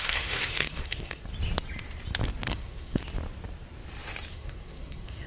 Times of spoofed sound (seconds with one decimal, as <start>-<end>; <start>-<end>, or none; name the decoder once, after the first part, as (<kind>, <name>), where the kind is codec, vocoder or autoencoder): 0.0-1.3 (codec, SNAC); 2.5-3.0; 4.3-5.3